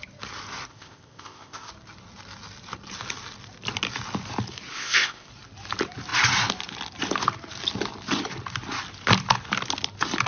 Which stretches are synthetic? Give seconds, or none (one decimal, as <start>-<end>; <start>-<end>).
0.7-1.7; 4.7-5.3